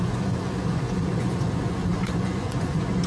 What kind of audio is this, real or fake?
fake